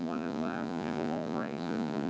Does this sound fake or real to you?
fake